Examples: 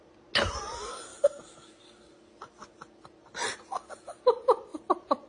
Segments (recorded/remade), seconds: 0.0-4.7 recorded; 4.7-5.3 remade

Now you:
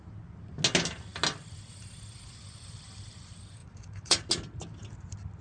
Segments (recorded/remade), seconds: 0.0-3.6 recorded; 3.6-4.3 remade; 4.3-5.4 recorded

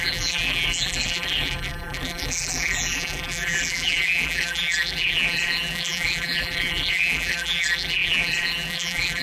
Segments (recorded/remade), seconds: 0.0-9.2 remade

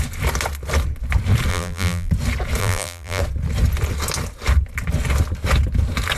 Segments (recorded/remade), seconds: 0.0-1.5 recorded; 1.5-2.1 remade; 2.1-2.6 recorded; 2.6-3.2 remade; 3.2-6.2 recorded

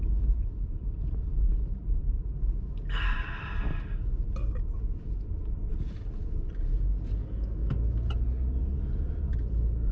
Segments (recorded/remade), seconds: 0.0-2.1 remade; 2.1-5.1 recorded; 5.1-7.6 remade; 7.6-8.6 recorded; 8.6-9.9 remade

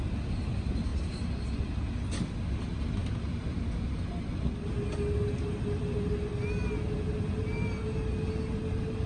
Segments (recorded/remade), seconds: 0.0-9.1 recorded

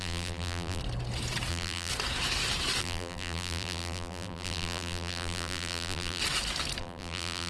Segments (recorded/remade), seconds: 0.0-0.8 remade; 0.8-1.5 recorded; 1.5-1.9 remade; 1.9-2.8 recorded; 2.8-6.2 remade; 6.2-6.8 recorded; 6.8-7.5 remade

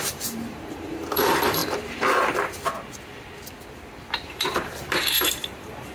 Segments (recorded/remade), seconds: 0.0-1.6 remade; 1.6-4.3 recorded; 4.3-5.9 remade